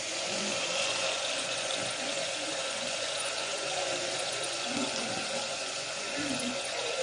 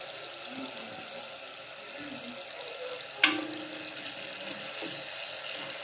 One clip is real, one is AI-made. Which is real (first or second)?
second